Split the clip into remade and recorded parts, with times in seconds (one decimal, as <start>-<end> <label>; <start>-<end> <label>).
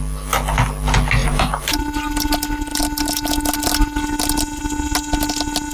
0.0-1.2 recorded; 1.2-1.8 remade; 1.8-5.7 recorded